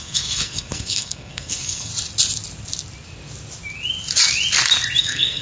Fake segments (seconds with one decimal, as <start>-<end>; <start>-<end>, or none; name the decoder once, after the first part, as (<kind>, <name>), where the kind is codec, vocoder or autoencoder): 0.0-1.9 (codec, SNAC); 5.0-5.4